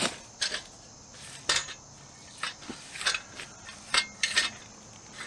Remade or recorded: recorded